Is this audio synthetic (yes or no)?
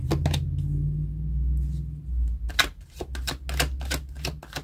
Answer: no